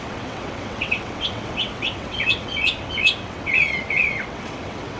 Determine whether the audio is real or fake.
fake